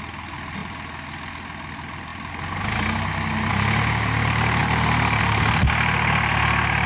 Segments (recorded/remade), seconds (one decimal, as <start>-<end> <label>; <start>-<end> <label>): 0.0-6.9 recorded